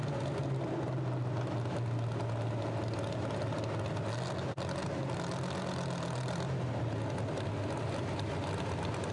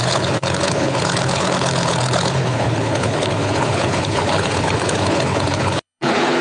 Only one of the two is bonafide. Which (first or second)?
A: first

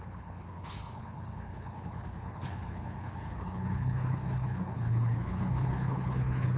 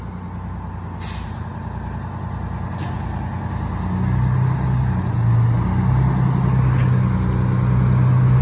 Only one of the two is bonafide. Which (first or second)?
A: second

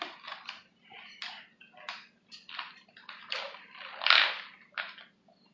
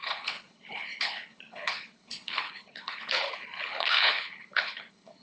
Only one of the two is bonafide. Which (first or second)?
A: first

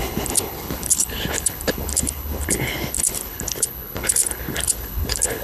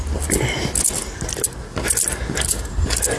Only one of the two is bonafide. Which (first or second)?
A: second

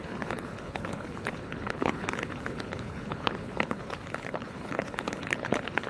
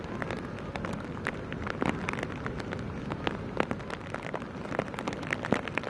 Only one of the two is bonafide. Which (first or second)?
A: second